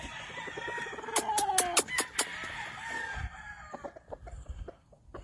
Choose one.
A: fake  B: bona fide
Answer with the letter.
B